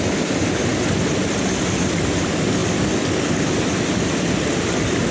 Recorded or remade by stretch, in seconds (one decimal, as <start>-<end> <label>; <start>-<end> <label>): 0.0-5.1 recorded